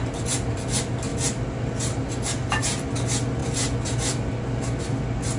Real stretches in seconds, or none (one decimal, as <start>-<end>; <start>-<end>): 0.0-5.4